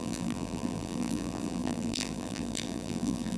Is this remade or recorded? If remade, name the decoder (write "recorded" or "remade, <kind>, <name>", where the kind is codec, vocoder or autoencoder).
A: remade, vocoder, BigVGAN v2